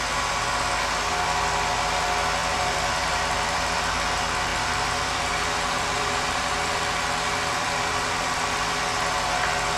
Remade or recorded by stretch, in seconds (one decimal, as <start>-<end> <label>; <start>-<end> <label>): 0.0-2.4 recorded; 2.4-3.9 remade; 3.9-4.5 recorded; 4.5-8.8 remade; 8.8-9.8 recorded